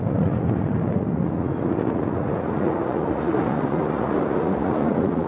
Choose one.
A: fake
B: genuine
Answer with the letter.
A